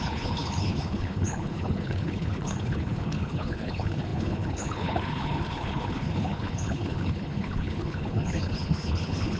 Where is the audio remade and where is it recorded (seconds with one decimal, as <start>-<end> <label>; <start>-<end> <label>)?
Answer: 0.0-9.4 remade